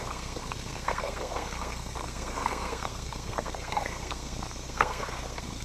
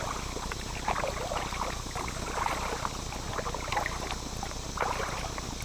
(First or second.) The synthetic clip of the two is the first